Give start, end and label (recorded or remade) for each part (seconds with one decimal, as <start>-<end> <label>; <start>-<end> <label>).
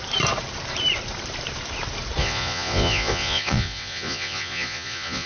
0.0-2.2 recorded; 2.2-5.3 remade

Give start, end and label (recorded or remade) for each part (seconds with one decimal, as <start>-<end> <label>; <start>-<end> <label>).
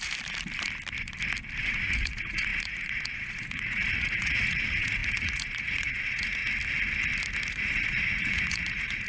0.0-1.6 recorded; 1.6-6.4 remade; 6.4-7.5 recorded; 7.5-9.1 remade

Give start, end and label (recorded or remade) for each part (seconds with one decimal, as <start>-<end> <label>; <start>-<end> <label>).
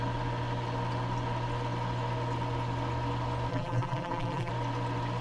0.0-3.5 recorded; 3.5-4.5 remade; 4.5-5.2 recorded